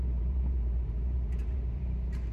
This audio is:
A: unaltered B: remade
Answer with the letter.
B